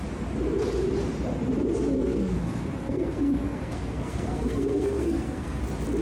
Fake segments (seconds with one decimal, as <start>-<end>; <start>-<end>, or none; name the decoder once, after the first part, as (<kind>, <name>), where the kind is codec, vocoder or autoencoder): 2.0-5.6 (codec, SNAC)